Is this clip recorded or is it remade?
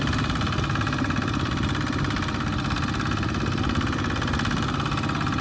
recorded